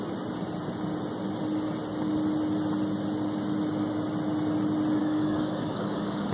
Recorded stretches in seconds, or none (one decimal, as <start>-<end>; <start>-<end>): 0.0-5.0